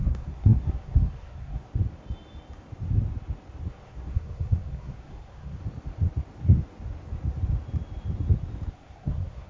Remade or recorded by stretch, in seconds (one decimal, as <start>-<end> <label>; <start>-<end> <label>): 0.0-1.7 remade; 1.7-3.7 recorded; 3.7-5.6 remade; 5.6-8.7 recorded; 8.7-9.5 remade